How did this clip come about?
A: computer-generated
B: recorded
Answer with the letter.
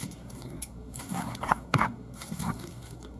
A